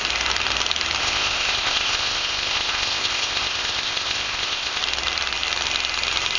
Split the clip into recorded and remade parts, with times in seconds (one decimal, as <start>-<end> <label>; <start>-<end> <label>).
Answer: 0.0-1.0 recorded; 1.0-4.8 remade; 4.8-6.4 recorded